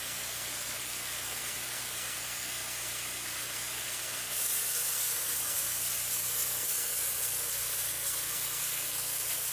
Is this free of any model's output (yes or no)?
no